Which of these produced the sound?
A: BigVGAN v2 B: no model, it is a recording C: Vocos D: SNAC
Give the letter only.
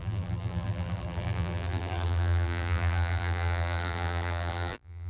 A